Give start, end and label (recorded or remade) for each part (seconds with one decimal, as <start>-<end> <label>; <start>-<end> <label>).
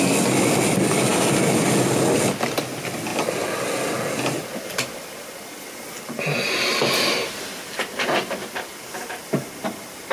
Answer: 0.0-10.1 recorded